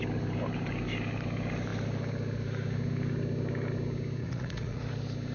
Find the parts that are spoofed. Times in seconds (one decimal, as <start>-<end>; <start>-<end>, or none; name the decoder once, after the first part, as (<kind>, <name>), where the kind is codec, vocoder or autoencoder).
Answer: 4.2-4.8 (vocoder, Vocos)